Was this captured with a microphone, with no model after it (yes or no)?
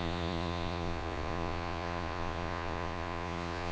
no